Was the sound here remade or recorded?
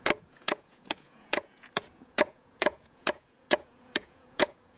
remade